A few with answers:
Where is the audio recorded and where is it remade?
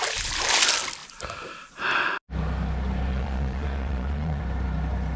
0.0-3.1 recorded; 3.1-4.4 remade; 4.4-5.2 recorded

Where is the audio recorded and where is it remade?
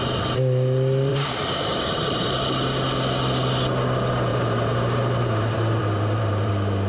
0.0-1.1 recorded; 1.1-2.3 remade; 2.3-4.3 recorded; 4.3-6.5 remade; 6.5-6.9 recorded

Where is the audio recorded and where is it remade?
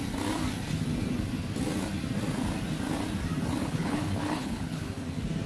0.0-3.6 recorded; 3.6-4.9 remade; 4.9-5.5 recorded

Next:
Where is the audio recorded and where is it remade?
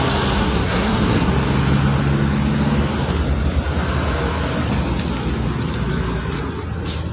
0.0-0.4 recorded; 0.4-1.3 remade; 1.3-7.1 recorded